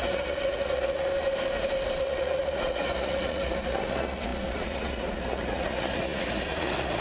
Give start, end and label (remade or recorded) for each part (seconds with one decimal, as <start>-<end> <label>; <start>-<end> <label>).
0.0-1.1 remade; 1.1-2.0 recorded; 2.0-7.0 remade